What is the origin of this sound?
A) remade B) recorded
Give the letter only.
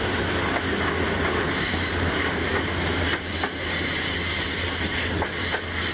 B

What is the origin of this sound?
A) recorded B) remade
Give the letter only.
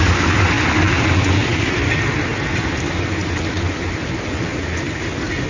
A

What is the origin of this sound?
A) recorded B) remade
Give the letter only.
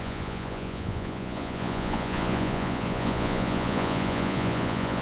B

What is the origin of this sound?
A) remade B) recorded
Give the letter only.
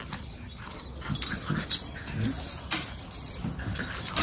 B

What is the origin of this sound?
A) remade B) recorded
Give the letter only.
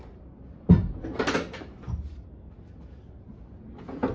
B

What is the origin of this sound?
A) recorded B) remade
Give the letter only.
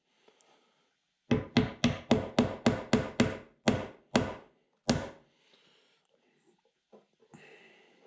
A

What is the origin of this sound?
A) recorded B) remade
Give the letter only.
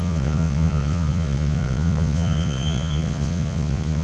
B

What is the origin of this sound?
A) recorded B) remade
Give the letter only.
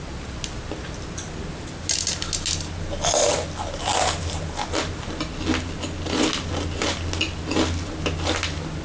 A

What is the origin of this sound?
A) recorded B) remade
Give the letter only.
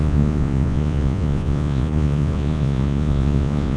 B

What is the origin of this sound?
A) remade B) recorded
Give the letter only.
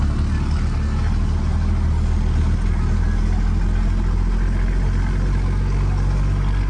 B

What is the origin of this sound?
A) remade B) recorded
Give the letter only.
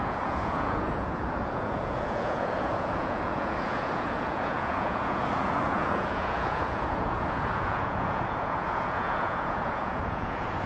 A